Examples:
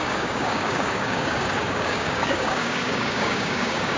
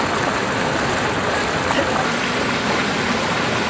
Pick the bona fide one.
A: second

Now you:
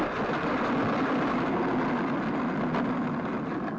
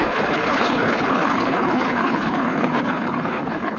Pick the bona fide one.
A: first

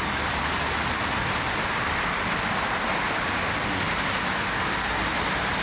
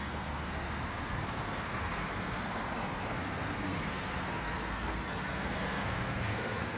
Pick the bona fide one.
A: first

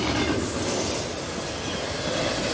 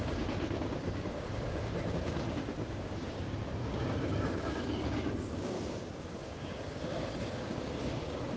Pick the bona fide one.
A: first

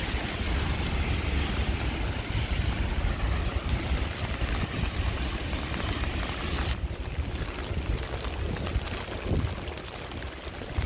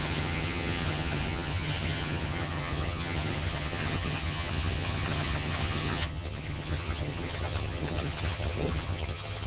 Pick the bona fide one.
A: first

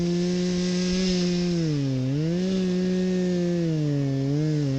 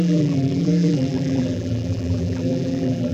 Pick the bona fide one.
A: first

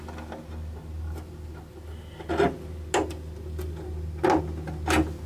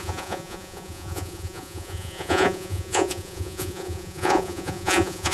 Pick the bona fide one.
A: first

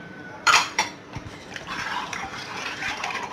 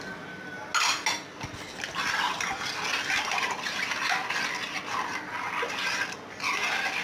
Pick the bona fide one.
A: second